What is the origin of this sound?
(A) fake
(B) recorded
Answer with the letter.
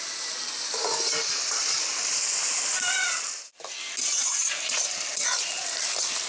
B